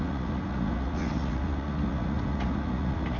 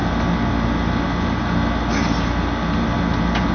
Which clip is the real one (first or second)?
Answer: second